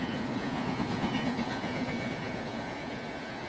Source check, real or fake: fake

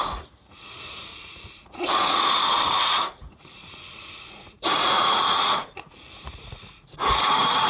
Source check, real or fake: fake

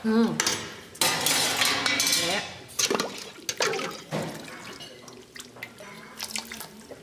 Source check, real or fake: real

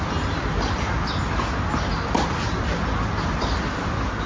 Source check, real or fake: real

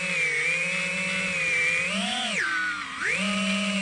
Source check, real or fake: real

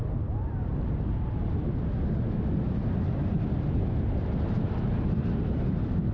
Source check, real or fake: real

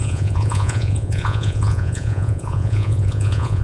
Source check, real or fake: fake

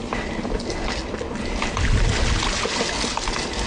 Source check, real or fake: real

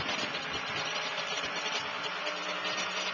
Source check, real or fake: real